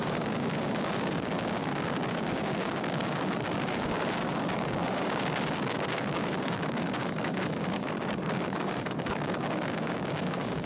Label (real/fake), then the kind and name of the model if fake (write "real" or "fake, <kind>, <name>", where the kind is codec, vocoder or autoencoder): fake, codec, DAC